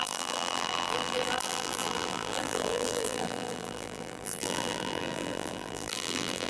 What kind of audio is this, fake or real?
fake